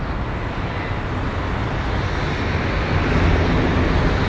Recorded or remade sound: recorded